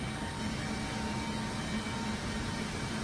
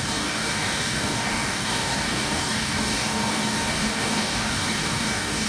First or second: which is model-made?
second